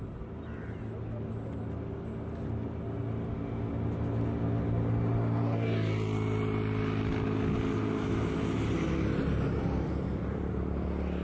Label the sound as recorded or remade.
recorded